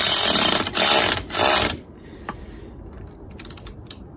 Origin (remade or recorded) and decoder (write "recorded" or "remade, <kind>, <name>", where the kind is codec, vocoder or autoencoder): remade, vocoder, BigVGAN v2